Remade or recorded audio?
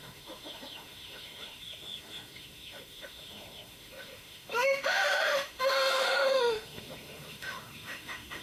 remade